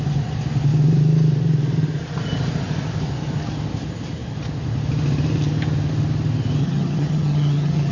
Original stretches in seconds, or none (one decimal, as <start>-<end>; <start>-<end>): 0.0-6.6